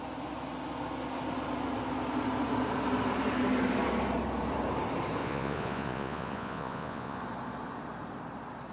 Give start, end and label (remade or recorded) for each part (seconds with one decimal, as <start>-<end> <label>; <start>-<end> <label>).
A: 0.0-5.2 recorded; 5.2-7.2 remade; 7.2-8.7 recorded